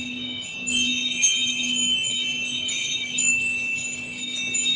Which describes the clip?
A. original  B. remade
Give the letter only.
B